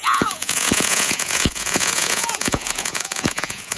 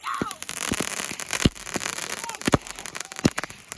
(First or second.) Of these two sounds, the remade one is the first